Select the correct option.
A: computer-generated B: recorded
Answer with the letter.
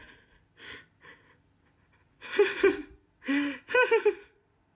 B